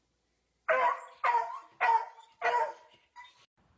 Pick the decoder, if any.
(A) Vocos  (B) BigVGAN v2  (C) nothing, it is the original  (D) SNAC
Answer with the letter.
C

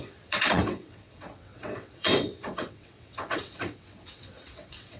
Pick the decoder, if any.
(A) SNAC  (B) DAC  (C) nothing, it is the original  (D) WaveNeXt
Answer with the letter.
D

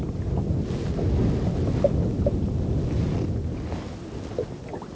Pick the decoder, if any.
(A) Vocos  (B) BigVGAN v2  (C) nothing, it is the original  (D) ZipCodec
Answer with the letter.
C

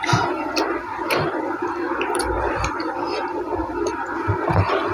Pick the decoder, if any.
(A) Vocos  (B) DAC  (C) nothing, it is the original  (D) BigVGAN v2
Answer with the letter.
D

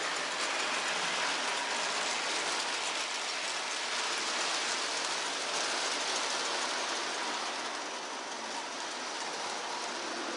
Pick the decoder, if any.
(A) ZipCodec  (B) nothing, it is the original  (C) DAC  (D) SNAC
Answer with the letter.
B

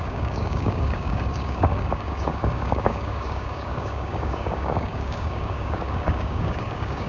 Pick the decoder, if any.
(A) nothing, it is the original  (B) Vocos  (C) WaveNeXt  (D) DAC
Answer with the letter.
D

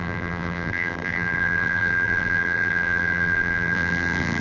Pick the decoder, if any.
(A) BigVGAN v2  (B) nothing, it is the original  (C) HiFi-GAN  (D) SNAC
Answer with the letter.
A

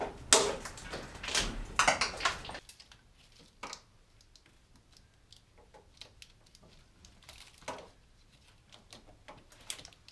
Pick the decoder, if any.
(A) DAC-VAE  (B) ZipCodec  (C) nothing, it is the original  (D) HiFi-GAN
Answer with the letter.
C